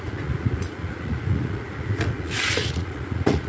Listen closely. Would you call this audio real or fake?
fake